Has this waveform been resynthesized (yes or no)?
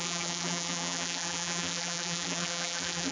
yes